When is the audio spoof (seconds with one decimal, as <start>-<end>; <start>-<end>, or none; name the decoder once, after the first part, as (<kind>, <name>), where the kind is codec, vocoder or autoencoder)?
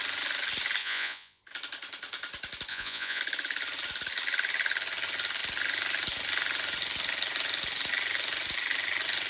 0.8-1.4 (vocoder, Vocos); 2.7-3.2